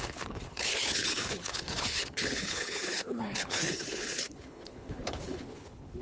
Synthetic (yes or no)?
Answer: yes